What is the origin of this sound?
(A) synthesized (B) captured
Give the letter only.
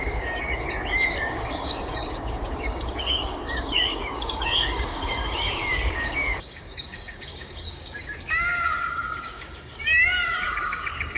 A